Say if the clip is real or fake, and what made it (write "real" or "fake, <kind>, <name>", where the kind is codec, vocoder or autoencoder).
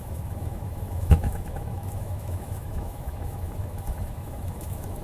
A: fake, autoencoder, DAC-VAE